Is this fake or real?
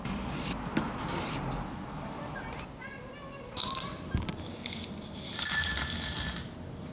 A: real